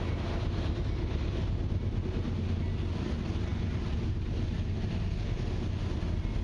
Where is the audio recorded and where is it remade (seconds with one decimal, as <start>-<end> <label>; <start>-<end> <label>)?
0.0-6.4 recorded